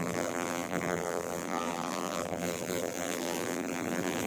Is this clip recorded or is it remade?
remade